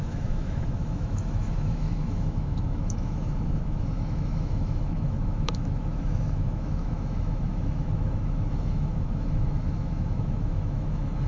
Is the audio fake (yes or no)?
yes